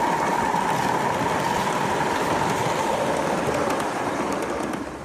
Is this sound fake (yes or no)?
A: no